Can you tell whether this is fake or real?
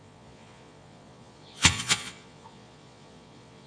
fake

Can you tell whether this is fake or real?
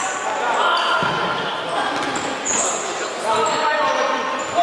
real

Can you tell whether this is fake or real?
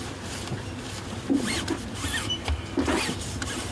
real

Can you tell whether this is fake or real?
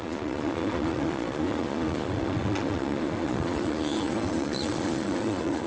fake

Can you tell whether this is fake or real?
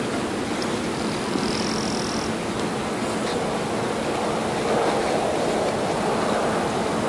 real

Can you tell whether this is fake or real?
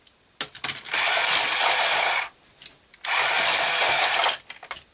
real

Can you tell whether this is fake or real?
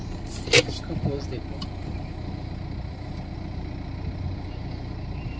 real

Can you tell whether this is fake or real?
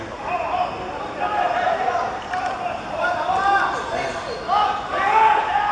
real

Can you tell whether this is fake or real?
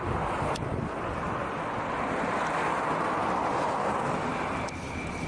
real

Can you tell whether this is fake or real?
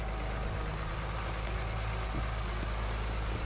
real